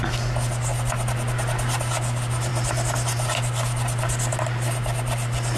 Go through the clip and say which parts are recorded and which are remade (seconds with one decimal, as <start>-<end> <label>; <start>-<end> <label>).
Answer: 0.0-5.6 recorded